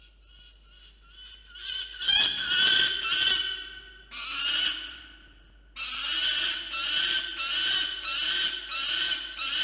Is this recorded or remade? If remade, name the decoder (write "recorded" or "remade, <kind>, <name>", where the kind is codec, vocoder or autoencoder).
recorded